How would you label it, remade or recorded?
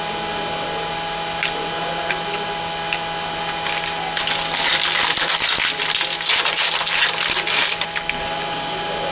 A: recorded